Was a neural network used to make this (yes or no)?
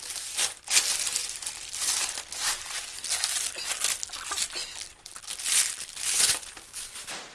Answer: no